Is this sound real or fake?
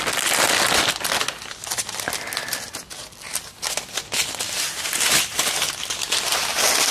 real